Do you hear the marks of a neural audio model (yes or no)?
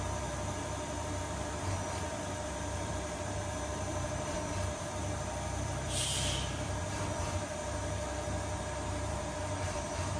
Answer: yes